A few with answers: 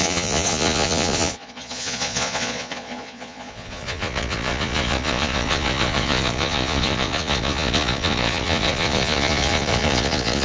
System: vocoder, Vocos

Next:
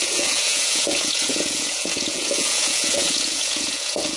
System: vocoder, Vocos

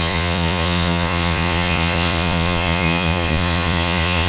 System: vocoder, Vocos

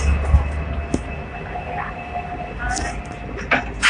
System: none